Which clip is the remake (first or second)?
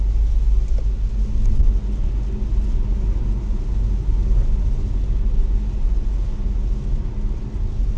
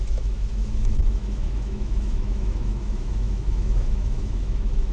second